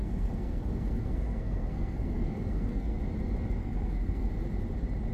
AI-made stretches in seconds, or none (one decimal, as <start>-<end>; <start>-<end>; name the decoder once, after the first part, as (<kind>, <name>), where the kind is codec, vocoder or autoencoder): 0.0-3.0 (codec, SNAC); 3.6-4.3